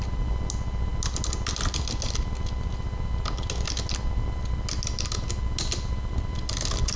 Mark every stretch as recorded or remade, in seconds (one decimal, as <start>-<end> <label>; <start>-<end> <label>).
0.0-7.0 recorded